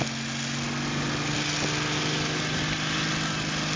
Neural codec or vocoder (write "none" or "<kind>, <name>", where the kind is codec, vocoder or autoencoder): none